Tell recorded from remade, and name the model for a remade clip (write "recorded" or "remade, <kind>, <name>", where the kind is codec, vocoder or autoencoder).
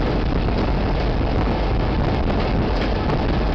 recorded